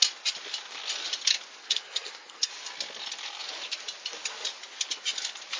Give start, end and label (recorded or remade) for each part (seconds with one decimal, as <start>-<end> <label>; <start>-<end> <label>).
0.0-1.6 recorded; 1.6-2.5 remade; 2.5-5.6 recorded